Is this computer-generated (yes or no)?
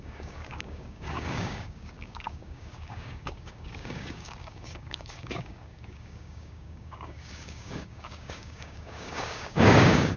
yes